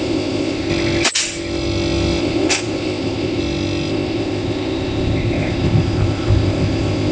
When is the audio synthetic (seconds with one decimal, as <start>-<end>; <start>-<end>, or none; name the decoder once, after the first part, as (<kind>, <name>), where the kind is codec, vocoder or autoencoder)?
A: 0.0-0.7 (codec, ZipCodec); 2.2-3.4; 3.9-7.1